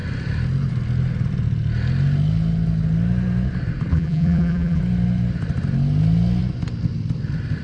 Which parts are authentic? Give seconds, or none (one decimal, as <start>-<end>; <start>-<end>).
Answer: 0.0-3.9; 4.8-7.6

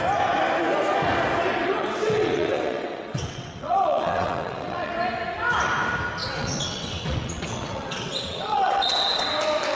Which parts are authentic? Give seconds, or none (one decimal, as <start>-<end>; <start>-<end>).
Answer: 0.0-1.6; 4.9-6.2; 9.3-9.8

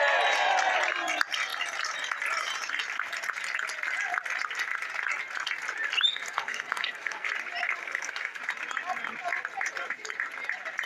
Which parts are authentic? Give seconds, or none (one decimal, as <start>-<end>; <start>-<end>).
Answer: 0.0-6.1; 7.3-7.8; 8.4-10.9